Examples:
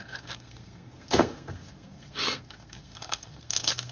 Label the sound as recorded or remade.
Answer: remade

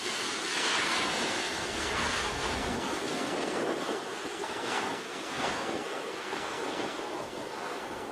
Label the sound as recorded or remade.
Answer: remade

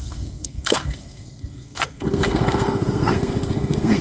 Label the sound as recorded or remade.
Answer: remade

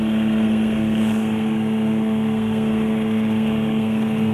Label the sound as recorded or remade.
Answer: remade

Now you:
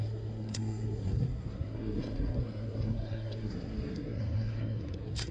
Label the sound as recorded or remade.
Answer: remade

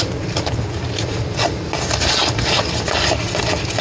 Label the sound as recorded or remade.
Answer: recorded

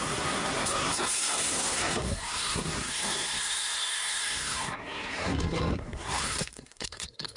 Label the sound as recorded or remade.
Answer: remade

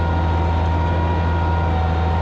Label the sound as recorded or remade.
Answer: recorded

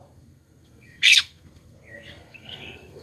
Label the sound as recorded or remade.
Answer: remade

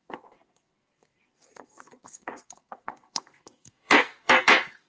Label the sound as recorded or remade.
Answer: remade